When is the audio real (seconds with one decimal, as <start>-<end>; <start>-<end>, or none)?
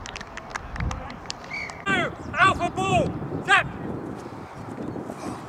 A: 0.0-0.5; 3.4-5.5